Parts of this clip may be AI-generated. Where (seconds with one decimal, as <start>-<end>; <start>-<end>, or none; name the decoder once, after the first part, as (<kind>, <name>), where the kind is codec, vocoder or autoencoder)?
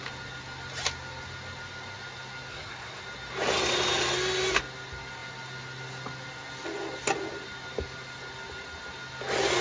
2.5-3.0 (codec, SNAC)